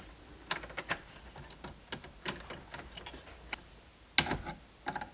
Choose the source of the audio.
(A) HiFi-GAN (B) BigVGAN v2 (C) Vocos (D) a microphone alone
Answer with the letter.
D